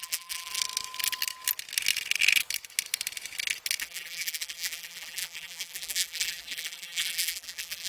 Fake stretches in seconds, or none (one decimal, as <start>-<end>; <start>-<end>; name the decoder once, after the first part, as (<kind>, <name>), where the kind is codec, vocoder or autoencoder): 0.0-0.6 (vocoder, BigVGAN v2); 3.8-7.9